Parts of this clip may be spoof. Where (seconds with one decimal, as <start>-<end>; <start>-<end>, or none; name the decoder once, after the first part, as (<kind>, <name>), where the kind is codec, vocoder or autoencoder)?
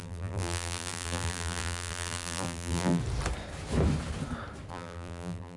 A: 0.0-3.0 (vocoder, BigVGAN v2); 4.7-5.6